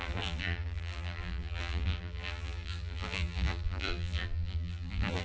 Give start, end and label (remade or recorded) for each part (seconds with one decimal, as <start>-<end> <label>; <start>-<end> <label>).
0.0-5.2 remade